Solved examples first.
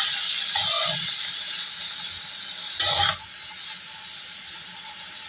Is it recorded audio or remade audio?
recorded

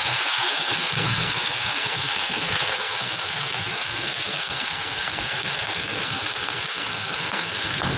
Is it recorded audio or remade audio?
remade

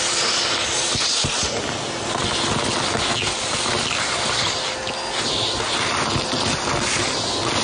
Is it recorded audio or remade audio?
recorded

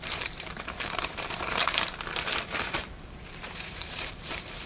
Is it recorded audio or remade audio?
remade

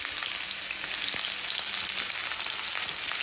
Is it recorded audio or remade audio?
recorded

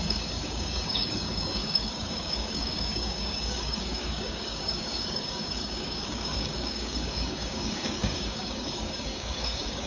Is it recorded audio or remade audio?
remade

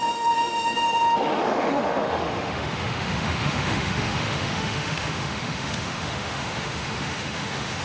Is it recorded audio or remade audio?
remade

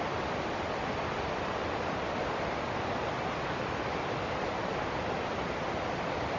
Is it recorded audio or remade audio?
recorded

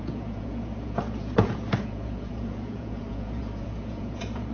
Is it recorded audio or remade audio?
remade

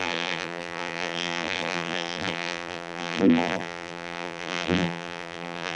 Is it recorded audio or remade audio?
remade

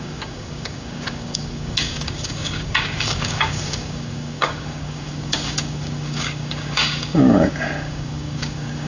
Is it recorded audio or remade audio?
remade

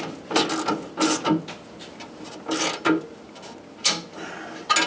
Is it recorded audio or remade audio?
recorded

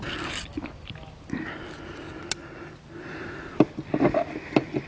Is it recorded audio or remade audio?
recorded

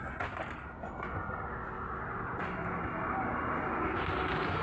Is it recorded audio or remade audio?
recorded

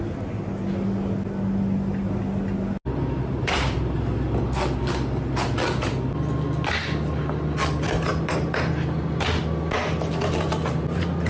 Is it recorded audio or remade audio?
recorded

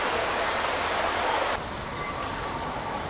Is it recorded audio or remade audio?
remade